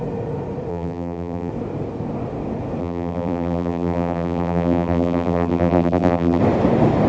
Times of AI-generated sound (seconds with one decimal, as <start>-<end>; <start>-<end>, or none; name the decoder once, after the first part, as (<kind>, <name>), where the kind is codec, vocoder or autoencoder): 0.7-1.5 (vocoder, BigVGAN v2); 2.8-6.4